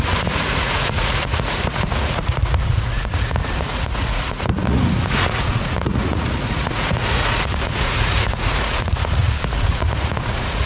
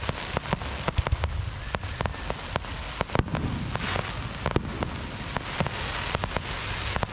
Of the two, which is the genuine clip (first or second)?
second